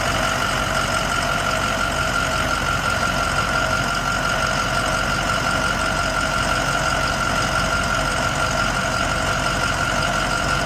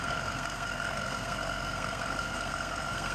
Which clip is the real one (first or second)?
first